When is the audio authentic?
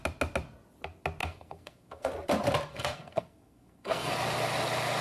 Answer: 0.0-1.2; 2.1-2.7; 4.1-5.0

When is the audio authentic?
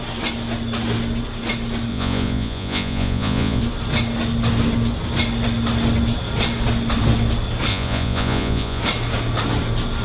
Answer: 0.0-1.9; 3.6-7.7; 8.8-10.0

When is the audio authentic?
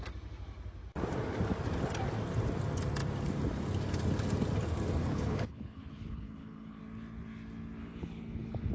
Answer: 0.0-5.0; 6.8-7.8